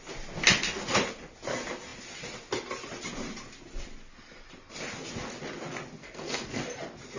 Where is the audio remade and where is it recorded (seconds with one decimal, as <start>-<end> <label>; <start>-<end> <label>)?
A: 0.0-6.0 recorded; 6.0-6.6 remade; 6.6-7.2 recorded